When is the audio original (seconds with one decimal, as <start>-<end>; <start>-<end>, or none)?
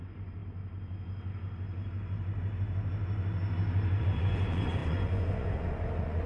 0.4-4.0